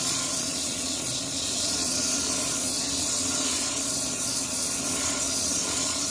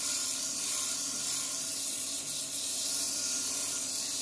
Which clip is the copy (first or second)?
first